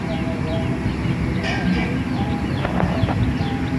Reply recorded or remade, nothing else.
recorded